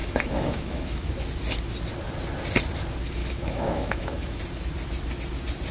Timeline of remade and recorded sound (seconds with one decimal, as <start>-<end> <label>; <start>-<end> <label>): 0.0-1.1 remade; 1.1-3.2 recorded; 3.2-4.4 remade; 4.4-5.7 recorded